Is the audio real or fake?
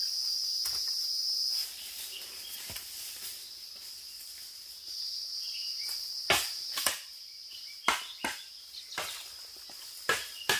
real